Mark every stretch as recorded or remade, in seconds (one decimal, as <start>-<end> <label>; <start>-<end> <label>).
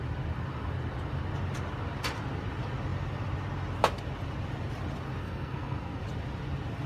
0.0-5.2 recorded; 5.2-6.0 remade; 6.0-6.9 recorded